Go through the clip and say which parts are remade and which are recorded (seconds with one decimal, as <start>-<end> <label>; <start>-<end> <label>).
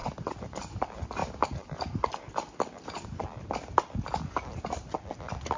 0.0-0.6 remade; 0.6-1.2 recorded; 1.2-2.3 remade; 2.3-5.6 recorded